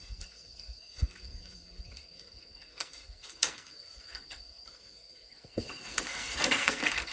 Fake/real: fake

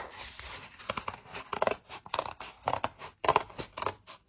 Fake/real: real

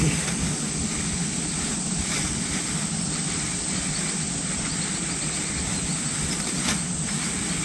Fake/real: real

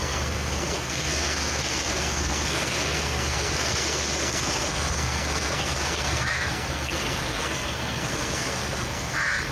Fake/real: fake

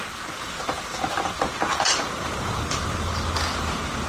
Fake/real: real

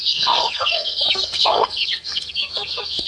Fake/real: fake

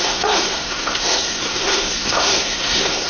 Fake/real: fake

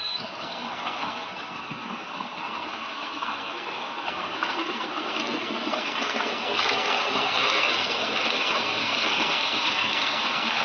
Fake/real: fake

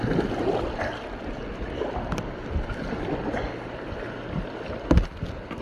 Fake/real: real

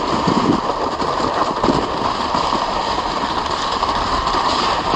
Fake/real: real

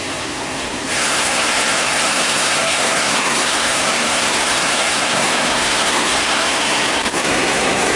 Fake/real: fake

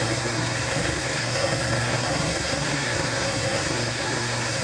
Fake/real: fake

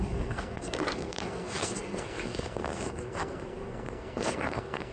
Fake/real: fake